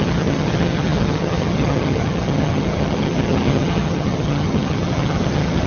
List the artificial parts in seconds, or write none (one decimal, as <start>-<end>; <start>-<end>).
0.0-5.7